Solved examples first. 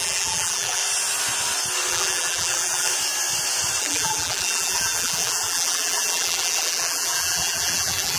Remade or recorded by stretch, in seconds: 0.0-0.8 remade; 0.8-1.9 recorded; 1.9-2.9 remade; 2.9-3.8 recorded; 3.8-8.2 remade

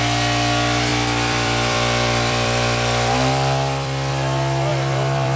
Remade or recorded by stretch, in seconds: 0.0-0.9 recorded; 0.9-4.1 remade; 4.1-4.7 recorded; 4.7-5.4 remade

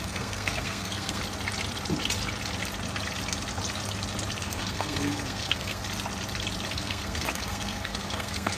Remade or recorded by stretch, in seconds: 0.0-1.2 remade; 1.2-4.4 recorded; 4.4-5.8 remade; 5.8-6.7 recorded; 6.7-8.6 remade

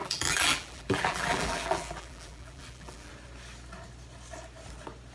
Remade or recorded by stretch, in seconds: 0.0-3.1 remade; 3.1-5.1 recorded

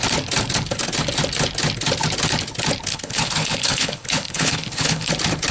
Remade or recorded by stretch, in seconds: 0.0-2.9 recorded; 2.9-5.1 remade; 5.1-5.5 recorded

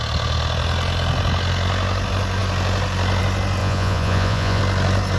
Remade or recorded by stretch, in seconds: 0.0-3.6 recorded; 3.6-4.6 remade; 4.6-5.2 recorded

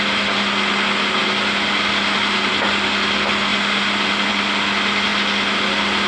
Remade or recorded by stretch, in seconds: 0.0-1.2 recorded; 1.2-2.5 remade; 2.5-3.5 recorded; 3.5-4.3 remade; 4.3-6.1 recorded